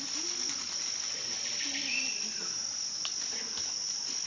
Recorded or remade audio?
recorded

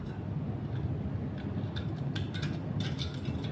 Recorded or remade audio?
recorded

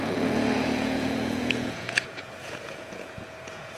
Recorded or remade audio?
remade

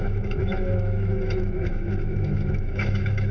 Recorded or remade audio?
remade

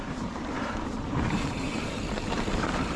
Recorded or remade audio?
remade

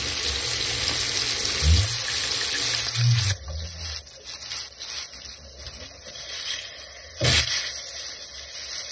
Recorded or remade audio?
recorded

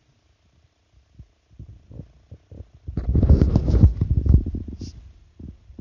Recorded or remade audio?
recorded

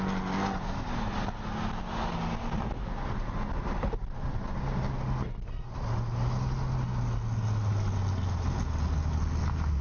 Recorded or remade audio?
recorded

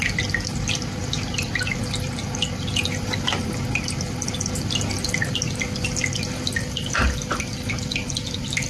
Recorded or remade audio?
recorded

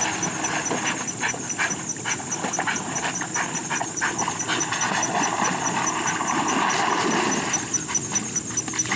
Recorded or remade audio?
recorded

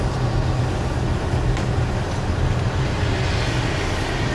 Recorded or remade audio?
recorded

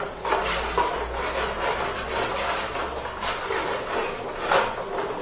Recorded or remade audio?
recorded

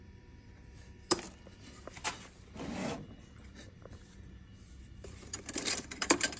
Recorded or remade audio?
remade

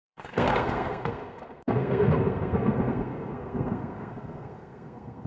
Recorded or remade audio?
remade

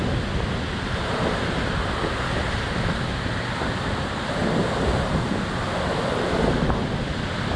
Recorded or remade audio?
recorded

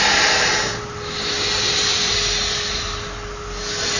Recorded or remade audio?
recorded